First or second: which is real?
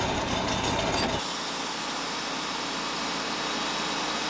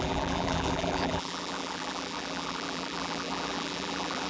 first